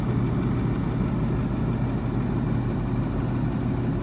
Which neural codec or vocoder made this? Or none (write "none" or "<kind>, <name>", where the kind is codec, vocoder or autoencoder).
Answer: none